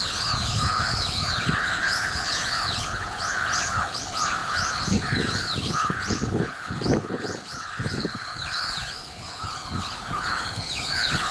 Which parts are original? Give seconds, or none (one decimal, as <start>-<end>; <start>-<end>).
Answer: none